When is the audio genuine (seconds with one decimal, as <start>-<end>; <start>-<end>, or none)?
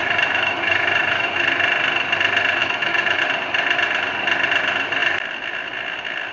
1.4-2.6; 3.2-6.3